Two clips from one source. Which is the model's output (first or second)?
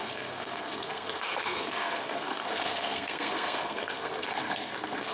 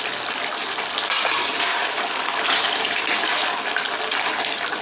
first